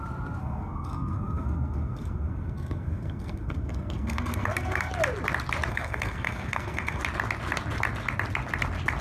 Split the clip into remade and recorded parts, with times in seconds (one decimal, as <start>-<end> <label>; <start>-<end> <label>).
0.0-0.4 recorded; 0.4-4.9 remade; 4.9-5.7 recorded; 5.7-7.0 remade; 7.0-9.0 recorded

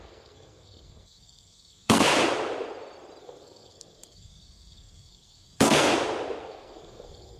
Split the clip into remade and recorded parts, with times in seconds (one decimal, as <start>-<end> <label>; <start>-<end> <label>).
0.0-2.1 remade; 2.1-3.2 recorded; 3.2-5.9 remade; 5.9-6.4 recorded; 6.4-7.4 remade

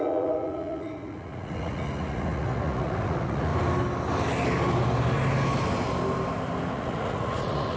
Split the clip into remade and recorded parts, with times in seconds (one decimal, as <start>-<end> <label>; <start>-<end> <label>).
0.0-3.5 remade; 3.5-6.7 recorded; 6.7-7.8 remade

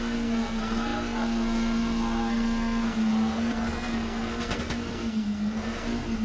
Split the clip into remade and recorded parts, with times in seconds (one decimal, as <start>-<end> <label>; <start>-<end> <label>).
0.0-6.2 remade

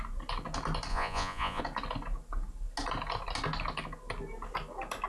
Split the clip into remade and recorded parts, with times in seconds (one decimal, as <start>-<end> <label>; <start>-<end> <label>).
0.0-0.9 recorded; 0.9-1.6 remade; 1.6-5.1 recorded

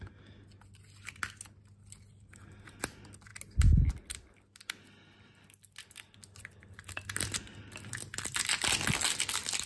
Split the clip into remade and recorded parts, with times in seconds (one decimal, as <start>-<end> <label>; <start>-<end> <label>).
0.0-9.7 recorded